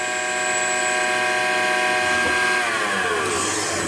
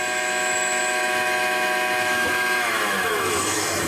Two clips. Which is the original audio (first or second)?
first